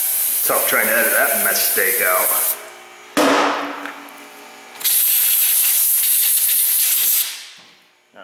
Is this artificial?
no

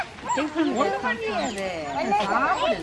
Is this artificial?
no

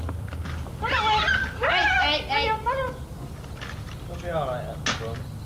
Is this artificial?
no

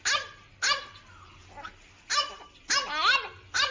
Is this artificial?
no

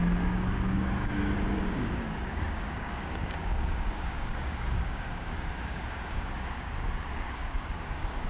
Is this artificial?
yes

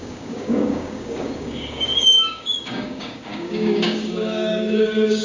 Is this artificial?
yes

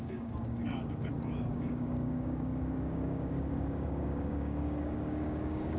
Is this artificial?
yes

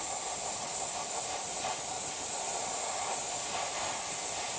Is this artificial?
no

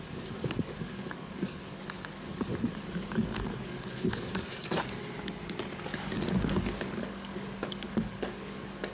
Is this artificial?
yes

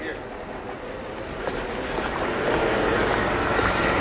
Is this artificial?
no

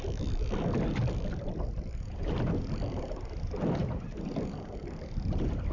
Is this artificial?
no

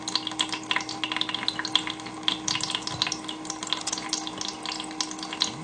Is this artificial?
no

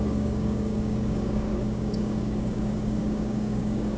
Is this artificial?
yes